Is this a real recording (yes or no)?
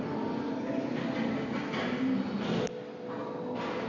yes